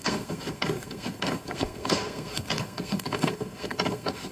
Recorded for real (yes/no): no